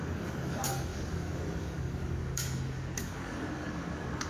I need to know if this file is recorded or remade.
remade